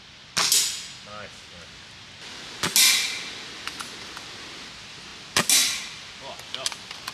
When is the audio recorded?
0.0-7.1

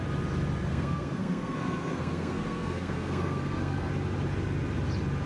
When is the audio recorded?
0.0-0.7; 3.9-5.3

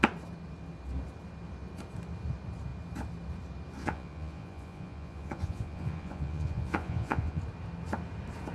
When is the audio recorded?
0.0-3.8; 7.4-8.5

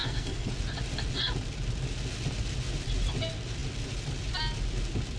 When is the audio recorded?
0.5-5.2

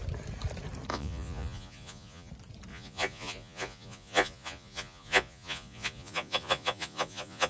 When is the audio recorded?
0.0-0.9; 2.3-2.7

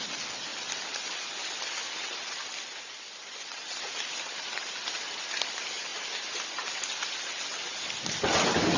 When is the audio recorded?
0.5-2.5; 5.9-6.5

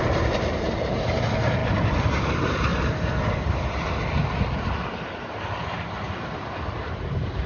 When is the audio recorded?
1.6-2.2; 2.7-6.8